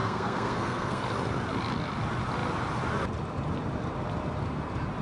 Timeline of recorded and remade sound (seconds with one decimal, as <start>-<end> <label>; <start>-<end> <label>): 0.0-1.0 remade; 1.0-5.0 recorded